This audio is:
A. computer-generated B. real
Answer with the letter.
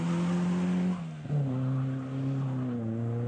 B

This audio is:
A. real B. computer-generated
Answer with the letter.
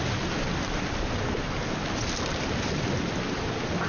A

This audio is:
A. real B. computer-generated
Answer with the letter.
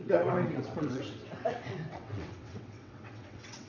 B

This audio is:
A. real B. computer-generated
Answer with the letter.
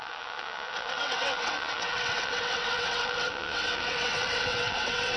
B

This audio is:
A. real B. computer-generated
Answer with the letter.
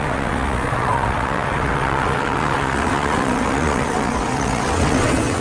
B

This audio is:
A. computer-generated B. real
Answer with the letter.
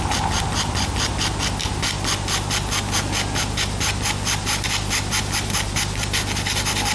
B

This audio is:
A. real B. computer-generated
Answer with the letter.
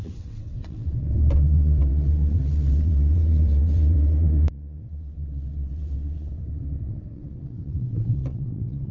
B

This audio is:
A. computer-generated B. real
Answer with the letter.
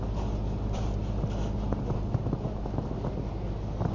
B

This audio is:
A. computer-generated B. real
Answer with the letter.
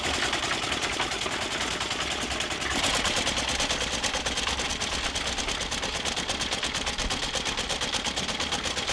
B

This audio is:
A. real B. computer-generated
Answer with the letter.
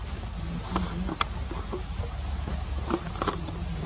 A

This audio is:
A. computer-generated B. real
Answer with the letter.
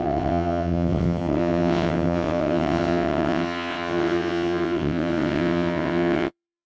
A